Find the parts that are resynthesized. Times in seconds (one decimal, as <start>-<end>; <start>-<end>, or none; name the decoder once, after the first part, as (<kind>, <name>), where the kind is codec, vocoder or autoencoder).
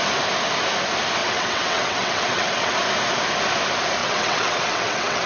1.2-2.7 (vocoder, WaveNeXt); 4.0-5.3